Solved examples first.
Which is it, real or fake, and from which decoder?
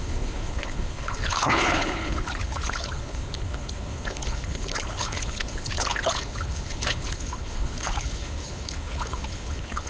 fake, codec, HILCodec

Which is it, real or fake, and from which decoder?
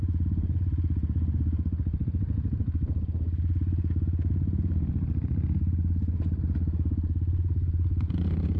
real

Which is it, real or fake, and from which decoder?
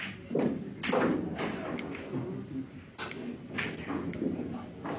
real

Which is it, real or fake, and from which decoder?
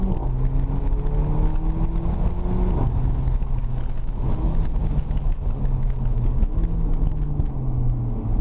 real